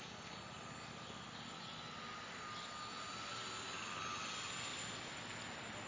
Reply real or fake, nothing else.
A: real